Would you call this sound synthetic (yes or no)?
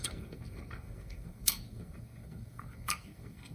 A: yes